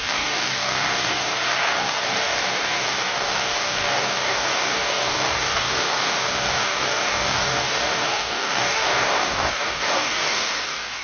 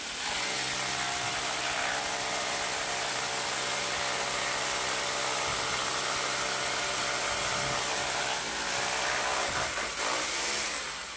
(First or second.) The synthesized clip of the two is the first